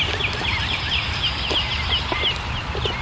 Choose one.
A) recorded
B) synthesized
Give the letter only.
A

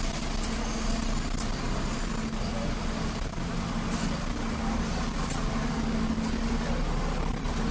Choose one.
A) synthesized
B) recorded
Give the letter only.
B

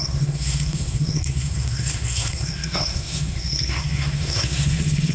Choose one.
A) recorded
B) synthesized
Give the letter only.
B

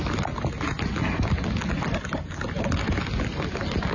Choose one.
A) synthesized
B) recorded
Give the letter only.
B